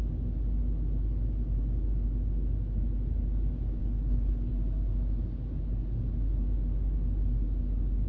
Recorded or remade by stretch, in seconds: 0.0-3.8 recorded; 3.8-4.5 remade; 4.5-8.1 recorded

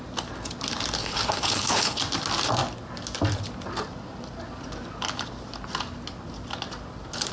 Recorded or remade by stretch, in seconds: 0.0-1.0 recorded; 1.0-2.0 remade; 2.0-7.3 recorded

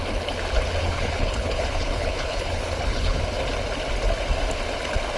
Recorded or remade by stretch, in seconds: 0.0-0.8 recorded; 0.8-3.2 remade; 3.2-5.2 recorded

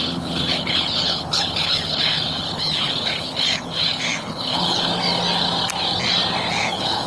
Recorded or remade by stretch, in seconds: 0.0-4.9 remade; 4.9-6.5 recorded; 6.5-7.1 remade